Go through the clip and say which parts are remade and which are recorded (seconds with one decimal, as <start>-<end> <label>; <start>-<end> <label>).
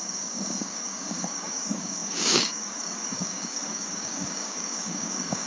0.0-5.5 remade